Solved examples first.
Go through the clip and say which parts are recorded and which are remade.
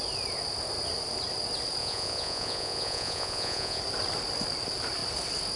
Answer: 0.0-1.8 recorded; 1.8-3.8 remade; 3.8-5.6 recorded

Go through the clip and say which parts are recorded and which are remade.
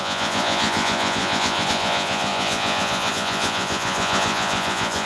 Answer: 0.0-5.0 remade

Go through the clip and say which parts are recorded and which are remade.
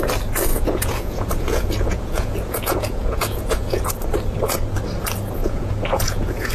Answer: 0.0-0.5 recorded; 0.5-3.9 remade; 3.9-5.4 recorded; 5.4-6.5 remade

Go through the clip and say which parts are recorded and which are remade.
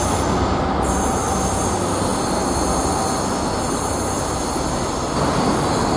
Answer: 0.0-6.0 recorded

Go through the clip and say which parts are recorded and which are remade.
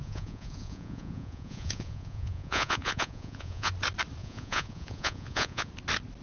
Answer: 0.0-3.7 remade; 3.7-4.2 recorded; 4.2-5.7 remade; 5.7-6.2 recorded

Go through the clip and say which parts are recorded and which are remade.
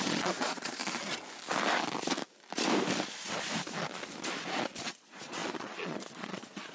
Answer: 0.0-0.8 remade; 0.8-4.8 recorded; 4.8-6.7 remade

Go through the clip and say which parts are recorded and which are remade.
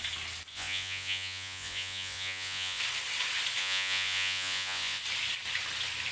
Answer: 0.0-0.5 recorded; 0.5-2.8 remade; 2.8-3.6 recorded; 3.6-5.0 remade; 5.0-6.1 recorded